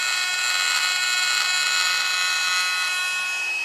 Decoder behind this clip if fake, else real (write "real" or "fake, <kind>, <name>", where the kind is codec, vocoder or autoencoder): real